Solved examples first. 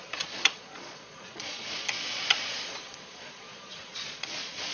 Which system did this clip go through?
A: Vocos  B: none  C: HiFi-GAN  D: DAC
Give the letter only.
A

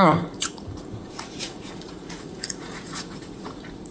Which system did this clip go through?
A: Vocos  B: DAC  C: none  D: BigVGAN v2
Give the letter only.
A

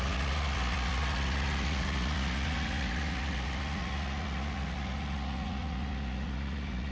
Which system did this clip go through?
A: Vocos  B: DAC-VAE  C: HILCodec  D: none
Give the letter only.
A